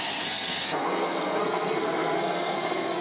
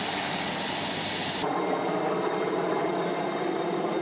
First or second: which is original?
second